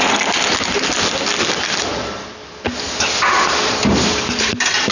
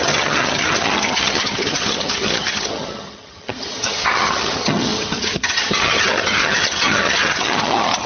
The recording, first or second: first